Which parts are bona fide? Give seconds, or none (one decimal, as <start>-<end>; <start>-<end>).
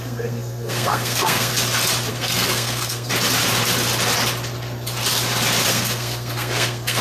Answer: 1.5-2.1; 3.1-5.7